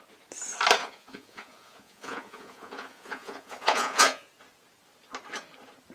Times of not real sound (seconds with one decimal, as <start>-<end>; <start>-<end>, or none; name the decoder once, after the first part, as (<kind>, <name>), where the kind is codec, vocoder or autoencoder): 0.8-4.3 (vocoder, Vocos)